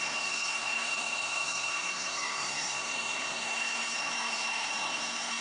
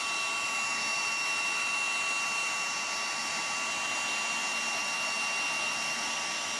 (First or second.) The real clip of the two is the second